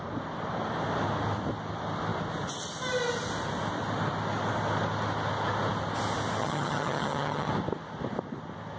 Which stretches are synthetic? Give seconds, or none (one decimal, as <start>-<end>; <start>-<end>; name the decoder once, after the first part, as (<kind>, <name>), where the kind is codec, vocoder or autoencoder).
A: 6.4-7.5 (vocoder, HiFi-GAN)